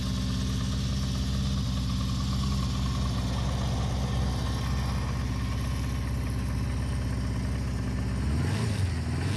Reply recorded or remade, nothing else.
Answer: recorded